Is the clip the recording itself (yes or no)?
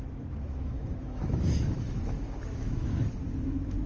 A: no